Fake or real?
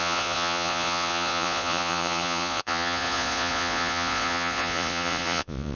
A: fake